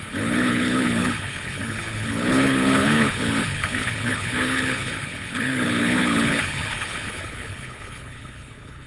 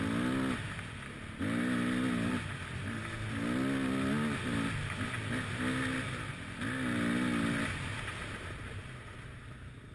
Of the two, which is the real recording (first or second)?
second